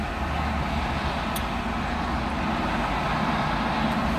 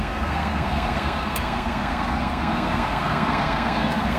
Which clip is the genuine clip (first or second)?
first